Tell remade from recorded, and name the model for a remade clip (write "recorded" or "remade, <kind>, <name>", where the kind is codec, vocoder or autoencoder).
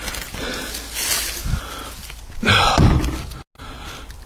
recorded